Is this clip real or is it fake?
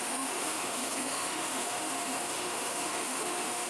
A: fake